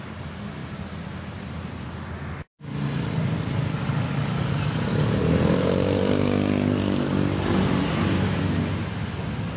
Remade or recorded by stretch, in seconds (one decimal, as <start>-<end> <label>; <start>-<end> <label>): 0.0-0.6 recorded; 0.6-1.4 remade; 1.4-4.9 recorded; 4.9-8.2 remade; 8.2-9.6 recorded